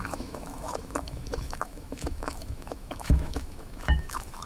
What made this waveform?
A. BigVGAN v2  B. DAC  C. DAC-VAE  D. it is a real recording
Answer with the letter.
C